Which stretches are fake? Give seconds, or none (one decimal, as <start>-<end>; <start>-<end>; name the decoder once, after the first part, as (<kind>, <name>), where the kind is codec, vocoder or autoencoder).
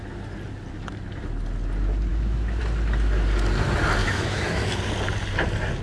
2.1-2.6 (autoencoder, DAC-VAE); 4.0-4.8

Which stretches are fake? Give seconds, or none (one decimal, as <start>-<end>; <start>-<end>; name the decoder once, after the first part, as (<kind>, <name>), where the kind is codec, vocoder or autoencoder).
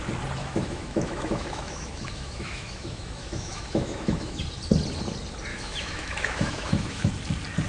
0.4-4.4 (autoencoder, DAC-VAE); 5.5-7.1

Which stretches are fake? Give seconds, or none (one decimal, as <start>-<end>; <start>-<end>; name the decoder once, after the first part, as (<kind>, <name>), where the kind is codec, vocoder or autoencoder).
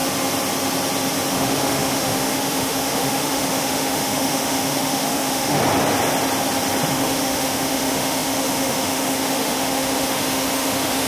1.3-5.6 (autoencoder, DAC-VAE); 6.9-11.1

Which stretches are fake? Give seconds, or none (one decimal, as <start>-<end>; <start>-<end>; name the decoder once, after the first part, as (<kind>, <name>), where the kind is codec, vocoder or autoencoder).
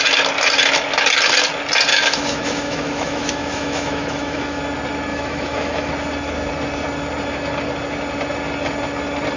1.9-4.6 (autoencoder, DAC-VAE); 5.1-5.9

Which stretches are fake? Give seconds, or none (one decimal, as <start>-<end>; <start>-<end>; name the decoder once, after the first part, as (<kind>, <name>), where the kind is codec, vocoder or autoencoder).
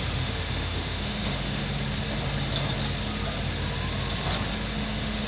0.0-1.6 (autoencoder, DAC-VAE); 4.8-5.3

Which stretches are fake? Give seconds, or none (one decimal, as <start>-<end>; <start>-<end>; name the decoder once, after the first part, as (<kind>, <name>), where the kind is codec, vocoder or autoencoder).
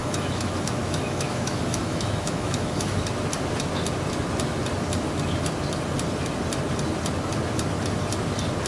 0.0-3.0 (autoencoder, DAC-VAE)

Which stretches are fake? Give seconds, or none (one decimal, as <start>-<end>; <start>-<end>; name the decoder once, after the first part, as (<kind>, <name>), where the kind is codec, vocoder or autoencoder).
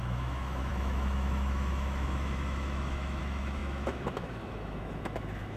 0.0-5.6 (autoencoder, DAC-VAE)